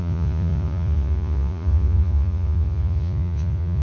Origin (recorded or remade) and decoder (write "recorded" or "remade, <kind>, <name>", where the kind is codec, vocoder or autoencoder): remade, vocoder, Vocos